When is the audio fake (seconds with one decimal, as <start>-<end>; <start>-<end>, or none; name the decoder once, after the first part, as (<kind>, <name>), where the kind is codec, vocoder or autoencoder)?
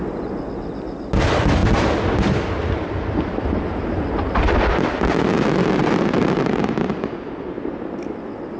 5.8-6.9 (vocoder, BigVGAN v2)